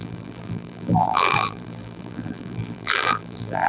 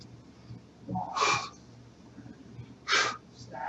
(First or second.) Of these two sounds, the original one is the second